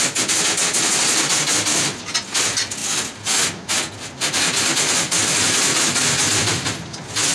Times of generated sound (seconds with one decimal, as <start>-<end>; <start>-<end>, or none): none